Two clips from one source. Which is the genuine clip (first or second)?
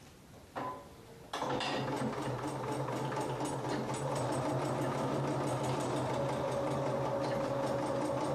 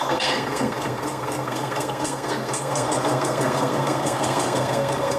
first